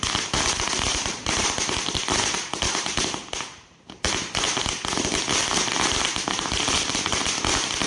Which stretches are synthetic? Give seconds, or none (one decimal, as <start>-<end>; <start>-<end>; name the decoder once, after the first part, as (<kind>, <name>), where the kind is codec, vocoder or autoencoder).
0.9-1.9 (vocoder, BigVGAN v2)